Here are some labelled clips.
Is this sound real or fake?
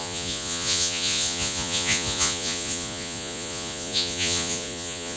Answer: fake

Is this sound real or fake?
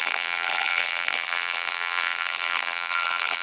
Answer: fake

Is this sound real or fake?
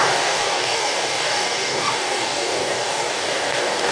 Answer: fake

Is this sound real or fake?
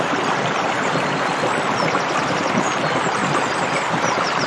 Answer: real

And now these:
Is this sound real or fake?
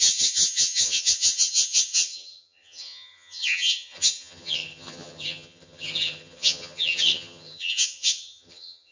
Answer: fake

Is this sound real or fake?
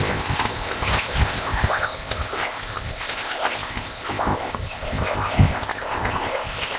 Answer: fake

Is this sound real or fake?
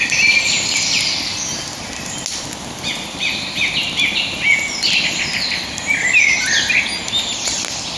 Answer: real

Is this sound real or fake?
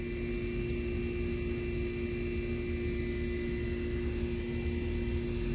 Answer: real